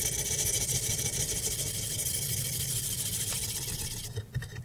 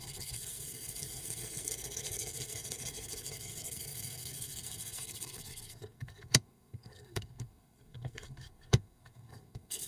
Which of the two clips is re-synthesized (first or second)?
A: second